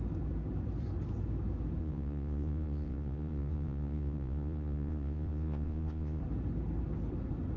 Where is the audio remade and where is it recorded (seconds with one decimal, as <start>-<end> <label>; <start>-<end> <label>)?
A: 0.0-1.8 recorded; 1.8-6.2 remade; 6.2-7.6 recorded